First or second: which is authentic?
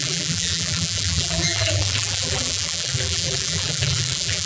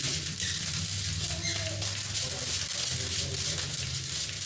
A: second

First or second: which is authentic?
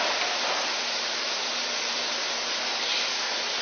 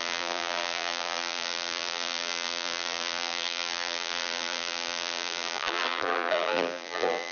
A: first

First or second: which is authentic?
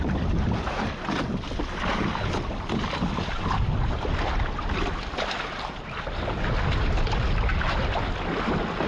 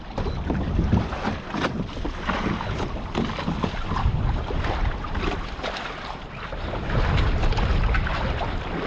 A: first